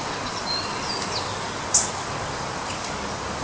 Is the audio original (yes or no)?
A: yes